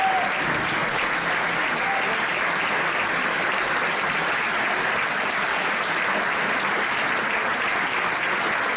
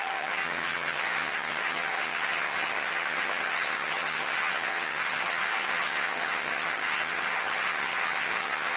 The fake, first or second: second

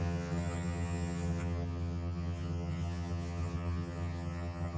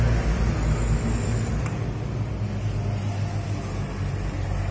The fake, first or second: first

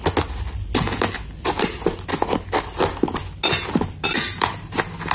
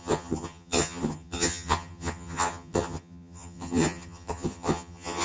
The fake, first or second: second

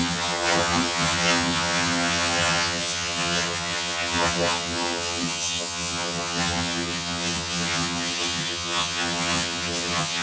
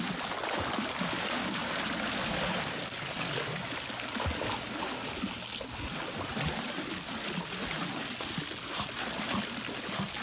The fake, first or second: first